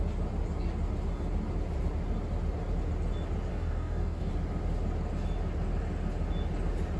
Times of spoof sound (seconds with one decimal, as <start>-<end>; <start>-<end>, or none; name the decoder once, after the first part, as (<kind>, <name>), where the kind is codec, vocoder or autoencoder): 3.5-4.3 (codec, DAC)